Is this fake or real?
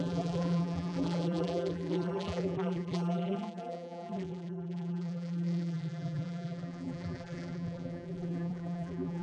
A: fake